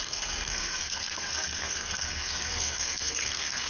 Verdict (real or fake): fake